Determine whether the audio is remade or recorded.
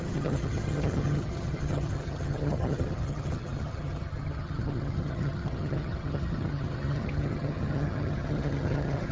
remade